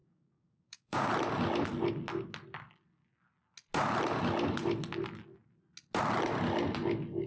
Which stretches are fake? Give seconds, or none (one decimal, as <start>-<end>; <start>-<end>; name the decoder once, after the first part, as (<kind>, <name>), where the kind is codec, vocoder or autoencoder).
0.0-1.1 (codec, DAC)